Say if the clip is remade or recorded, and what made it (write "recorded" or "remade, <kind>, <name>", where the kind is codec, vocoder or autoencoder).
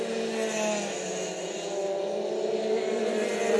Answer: recorded